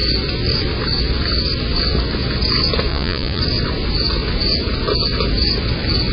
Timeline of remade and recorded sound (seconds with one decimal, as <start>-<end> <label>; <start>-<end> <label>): 0.0-2.9 recorded; 2.9-3.4 remade; 3.4-6.1 recorded